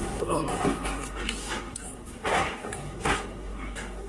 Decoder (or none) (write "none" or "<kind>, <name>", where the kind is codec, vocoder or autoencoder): codec, SNAC